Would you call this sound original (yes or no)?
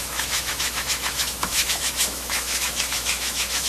no